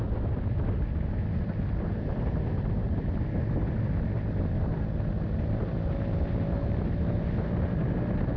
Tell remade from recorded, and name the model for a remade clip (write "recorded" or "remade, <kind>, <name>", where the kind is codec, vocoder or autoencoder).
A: recorded